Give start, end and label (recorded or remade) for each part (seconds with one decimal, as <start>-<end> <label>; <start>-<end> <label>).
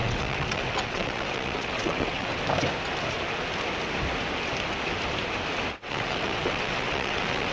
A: 0.0-2.3 remade; 2.3-5.7 recorded; 5.7-7.5 remade